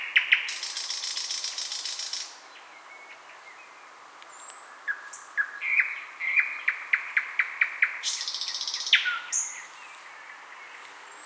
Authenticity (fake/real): real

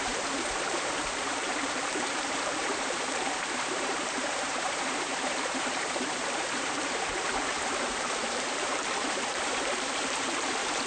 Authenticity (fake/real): fake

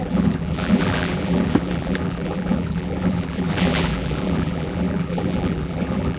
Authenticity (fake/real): fake